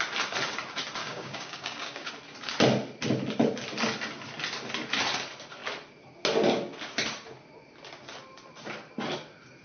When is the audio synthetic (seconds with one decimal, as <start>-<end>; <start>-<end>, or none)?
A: 1.0-2.1